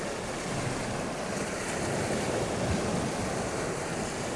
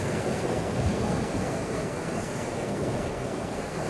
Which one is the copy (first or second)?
second